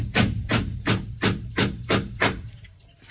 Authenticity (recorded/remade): remade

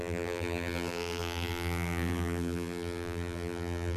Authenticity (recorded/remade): remade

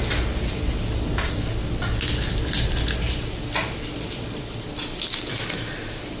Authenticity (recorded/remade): recorded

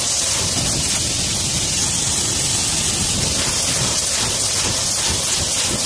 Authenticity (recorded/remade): recorded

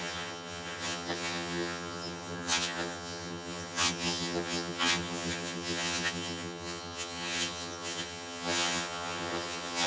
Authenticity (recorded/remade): remade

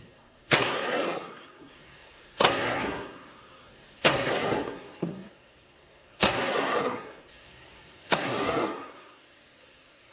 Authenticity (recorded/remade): remade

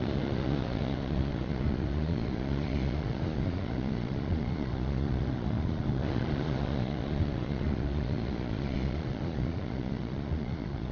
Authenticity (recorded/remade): remade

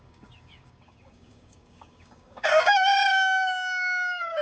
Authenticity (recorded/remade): remade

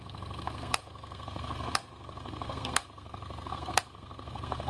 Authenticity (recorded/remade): remade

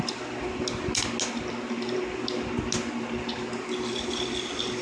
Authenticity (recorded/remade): recorded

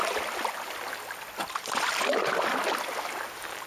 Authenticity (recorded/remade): recorded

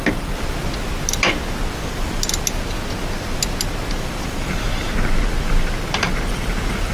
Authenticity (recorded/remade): recorded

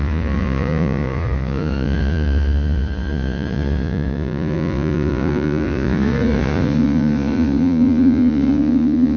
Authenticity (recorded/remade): remade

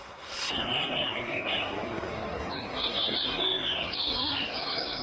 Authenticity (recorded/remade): remade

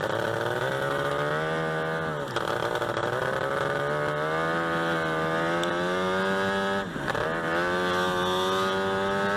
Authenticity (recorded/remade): recorded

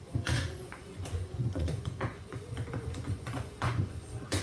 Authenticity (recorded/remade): remade